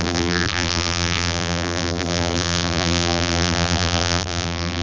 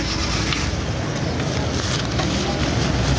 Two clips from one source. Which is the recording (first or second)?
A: second